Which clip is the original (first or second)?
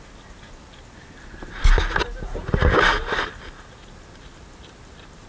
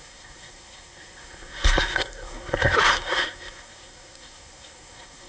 first